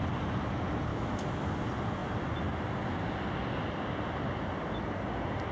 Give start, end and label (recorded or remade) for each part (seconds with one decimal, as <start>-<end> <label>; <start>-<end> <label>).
0.0-0.9 recorded; 0.9-1.5 remade; 1.5-5.5 recorded